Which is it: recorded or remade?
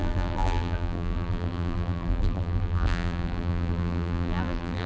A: remade